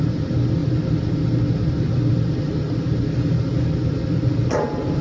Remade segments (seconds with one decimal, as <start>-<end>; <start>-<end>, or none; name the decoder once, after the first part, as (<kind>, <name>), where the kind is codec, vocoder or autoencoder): none